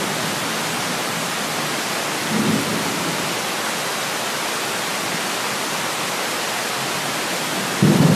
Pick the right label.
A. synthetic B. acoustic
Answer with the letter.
B